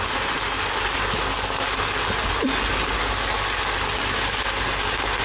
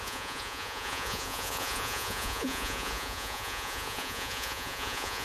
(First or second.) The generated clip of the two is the second